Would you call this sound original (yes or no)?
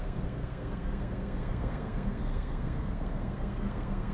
no